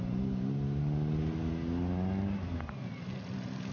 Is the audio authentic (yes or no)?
yes